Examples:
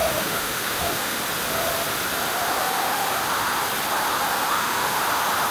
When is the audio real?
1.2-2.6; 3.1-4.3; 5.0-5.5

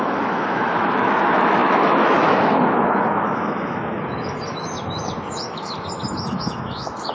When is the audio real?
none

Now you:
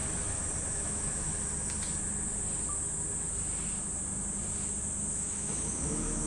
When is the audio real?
0.0-0.7; 1.3-5.1